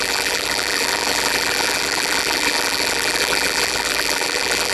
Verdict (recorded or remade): remade